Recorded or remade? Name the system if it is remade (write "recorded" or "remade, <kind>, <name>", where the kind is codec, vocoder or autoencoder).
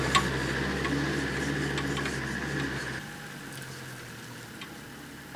recorded